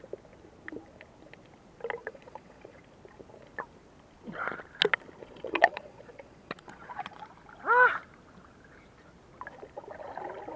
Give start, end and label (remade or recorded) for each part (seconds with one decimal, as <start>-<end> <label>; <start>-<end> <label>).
0.0-2.0 recorded; 2.0-2.8 remade; 2.8-5.2 recorded; 5.2-7.2 remade; 7.2-10.6 recorded